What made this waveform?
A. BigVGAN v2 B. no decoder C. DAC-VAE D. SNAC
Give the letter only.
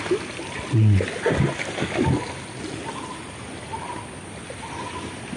B